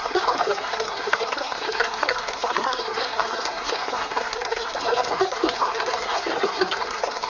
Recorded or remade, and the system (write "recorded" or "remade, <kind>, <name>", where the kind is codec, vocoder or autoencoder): remade, codec, SNAC